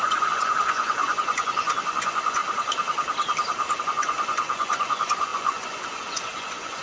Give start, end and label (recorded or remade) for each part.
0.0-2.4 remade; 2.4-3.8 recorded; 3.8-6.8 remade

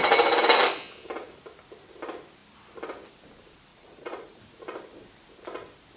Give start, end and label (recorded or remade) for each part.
0.0-3.7 recorded; 3.7-4.4 remade; 4.4-6.0 recorded

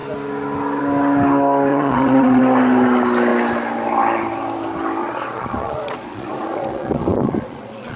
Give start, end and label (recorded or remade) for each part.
0.0-1.7 recorded; 1.7-2.4 remade; 2.4-5.0 recorded; 5.0-8.0 remade